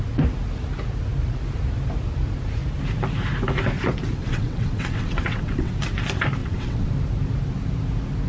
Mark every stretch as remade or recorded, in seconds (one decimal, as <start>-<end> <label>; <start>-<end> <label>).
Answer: 0.0-4.2 recorded; 4.2-5.7 remade; 5.7-6.4 recorded; 6.4-6.9 remade; 6.9-8.3 recorded